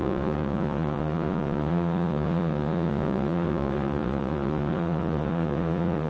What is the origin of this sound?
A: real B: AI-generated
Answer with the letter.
B